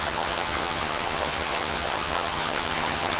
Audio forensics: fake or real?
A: fake